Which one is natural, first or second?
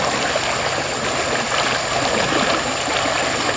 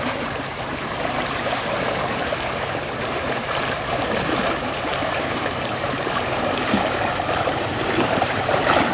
first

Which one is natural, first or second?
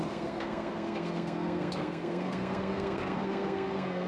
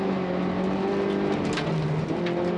second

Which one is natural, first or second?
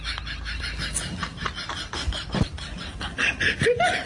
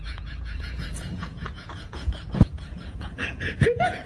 first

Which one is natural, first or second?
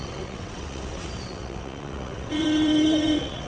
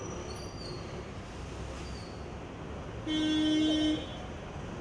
second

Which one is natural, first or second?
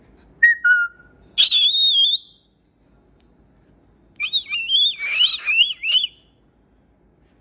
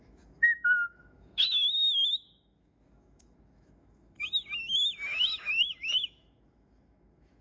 first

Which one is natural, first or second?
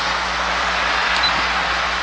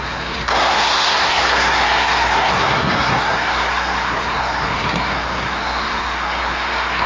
first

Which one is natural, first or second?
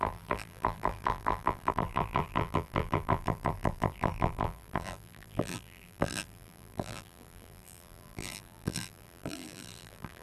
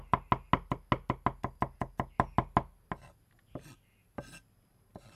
second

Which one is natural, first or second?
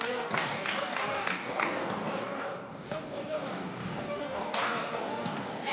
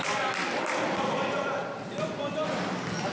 second